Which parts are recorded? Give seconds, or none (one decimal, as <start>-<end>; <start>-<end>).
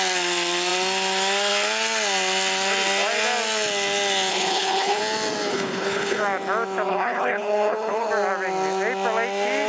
0.0-4.3; 5.0-5.5; 6.2-6.9; 8.1-9.7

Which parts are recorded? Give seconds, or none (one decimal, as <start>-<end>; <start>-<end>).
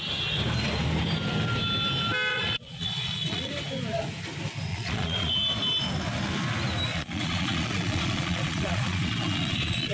0.0-2.3; 3.5-4.7; 5.3-6.9